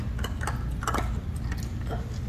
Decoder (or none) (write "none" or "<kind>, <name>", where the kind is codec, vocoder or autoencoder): none